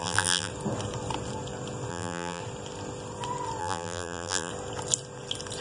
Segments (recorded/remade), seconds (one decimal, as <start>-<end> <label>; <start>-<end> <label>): 0.0-0.5 remade; 0.5-1.9 recorded; 1.9-2.4 remade; 2.4-3.6 recorded; 3.6-4.5 remade; 4.5-5.6 recorded